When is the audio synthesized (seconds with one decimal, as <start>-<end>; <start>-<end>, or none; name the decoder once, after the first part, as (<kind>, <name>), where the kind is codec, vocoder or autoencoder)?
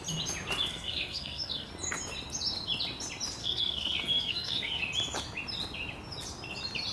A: 0.7-1.7 (codec, SNAC); 3.4-4.8